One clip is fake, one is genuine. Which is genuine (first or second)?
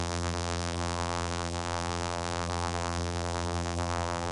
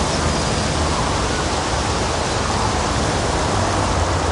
second